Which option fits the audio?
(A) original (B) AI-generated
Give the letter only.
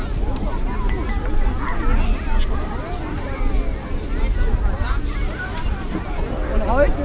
A